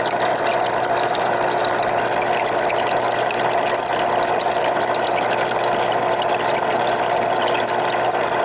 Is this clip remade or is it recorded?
recorded